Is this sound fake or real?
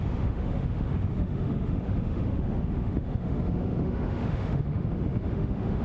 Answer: fake